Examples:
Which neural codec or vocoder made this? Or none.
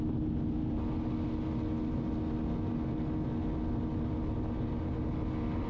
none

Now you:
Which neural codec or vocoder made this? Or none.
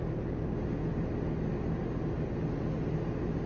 none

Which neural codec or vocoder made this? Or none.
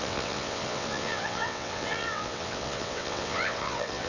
vocoder, WaveNeXt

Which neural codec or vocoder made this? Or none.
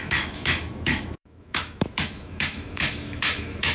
autoencoder, DAC-VAE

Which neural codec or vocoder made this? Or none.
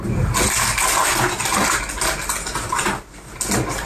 none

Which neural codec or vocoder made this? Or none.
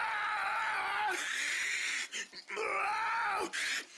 none